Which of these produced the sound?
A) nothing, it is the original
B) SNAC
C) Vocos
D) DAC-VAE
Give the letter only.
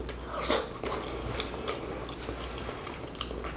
A